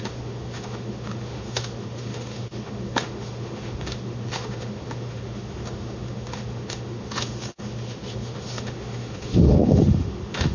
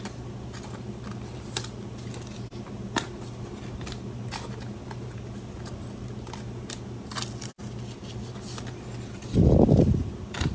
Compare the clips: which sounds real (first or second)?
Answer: second